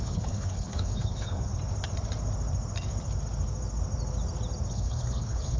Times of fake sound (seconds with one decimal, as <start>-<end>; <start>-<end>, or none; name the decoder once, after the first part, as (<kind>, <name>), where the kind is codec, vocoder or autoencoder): 0.0-1.5 (codec, HILCodec); 4.7-5.6